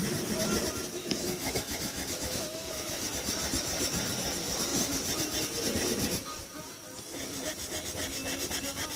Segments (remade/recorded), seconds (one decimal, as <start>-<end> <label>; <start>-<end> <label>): 0.0-1.0 recorded; 1.0-3.1 remade; 3.1-9.0 recorded